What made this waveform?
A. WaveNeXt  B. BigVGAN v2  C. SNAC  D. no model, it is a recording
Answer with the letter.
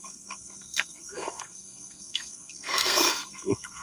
C